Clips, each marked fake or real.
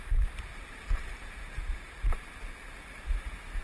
real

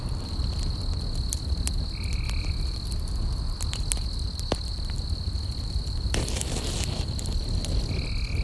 real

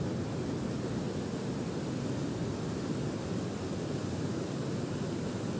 real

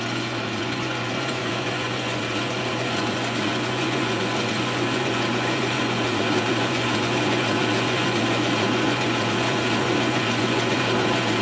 fake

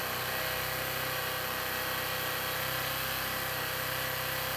real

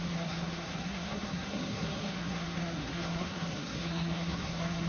fake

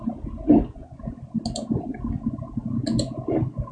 real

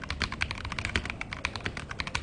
real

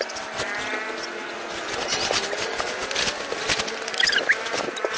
real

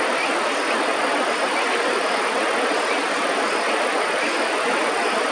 real